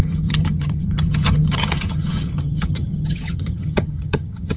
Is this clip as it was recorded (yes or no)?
no